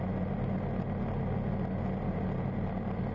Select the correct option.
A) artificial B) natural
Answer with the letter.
B